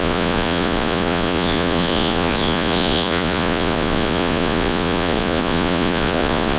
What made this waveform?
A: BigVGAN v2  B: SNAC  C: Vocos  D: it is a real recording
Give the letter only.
C